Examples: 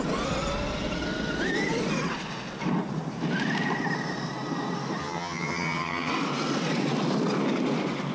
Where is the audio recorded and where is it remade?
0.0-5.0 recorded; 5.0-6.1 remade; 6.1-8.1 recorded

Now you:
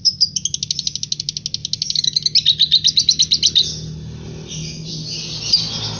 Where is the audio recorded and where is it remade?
0.0-6.0 recorded

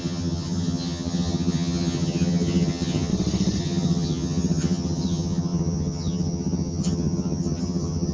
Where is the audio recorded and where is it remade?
0.0-3.1 remade; 3.1-3.6 recorded; 3.6-8.1 remade